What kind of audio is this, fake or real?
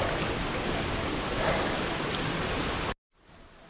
real